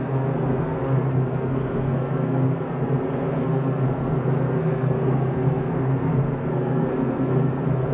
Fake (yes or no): yes